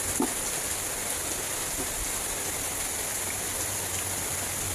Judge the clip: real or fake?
real